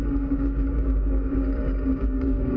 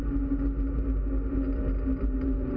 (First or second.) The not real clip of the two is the first